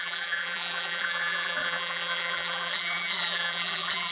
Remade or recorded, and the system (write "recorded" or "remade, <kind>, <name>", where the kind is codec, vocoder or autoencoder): remade, vocoder, BigVGAN v2